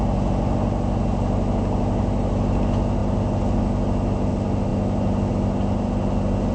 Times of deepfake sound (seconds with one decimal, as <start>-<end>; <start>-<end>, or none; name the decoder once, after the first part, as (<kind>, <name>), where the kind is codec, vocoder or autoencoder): none